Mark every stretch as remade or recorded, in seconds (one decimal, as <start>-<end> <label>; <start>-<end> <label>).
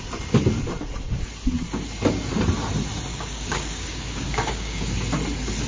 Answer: 0.0-3.1 recorded; 3.1-4.8 remade; 4.8-5.7 recorded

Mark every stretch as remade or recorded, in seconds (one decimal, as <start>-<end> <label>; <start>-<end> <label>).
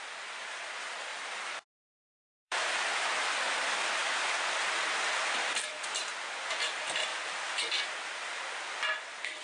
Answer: 0.0-1.1 recorded; 1.1-2.6 remade; 2.6-9.4 recorded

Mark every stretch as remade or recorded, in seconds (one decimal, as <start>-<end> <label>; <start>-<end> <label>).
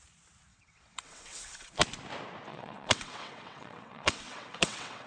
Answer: 0.0-0.5 recorded; 0.5-1.7 remade; 1.7-2.5 recorded; 2.5-5.1 remade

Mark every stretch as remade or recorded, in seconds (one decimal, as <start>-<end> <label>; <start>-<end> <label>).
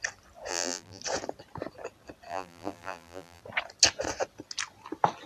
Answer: 0.0-0.5 recorded; 0.5-1.0 remade; 1.0-2.3 recorded; 2.3-3.4 remade; 3.4-5.3 recorded